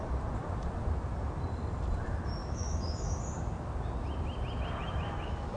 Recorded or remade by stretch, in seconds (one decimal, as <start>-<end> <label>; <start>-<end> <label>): 0.0-2.4 recorded; 2.4-3.1 remade; 3.1-4.8 recorded; 4.8-5.6 remade